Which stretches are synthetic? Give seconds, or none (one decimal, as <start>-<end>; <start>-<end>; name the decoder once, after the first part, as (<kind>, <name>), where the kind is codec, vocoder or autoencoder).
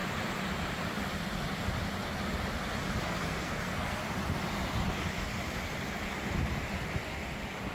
3.0-4.0 (codec, SNAC)